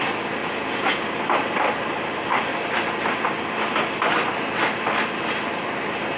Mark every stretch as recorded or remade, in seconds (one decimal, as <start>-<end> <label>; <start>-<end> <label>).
0.0-0.4 recorded; 0.4-1.0 remade; 1.0-6.2 recorded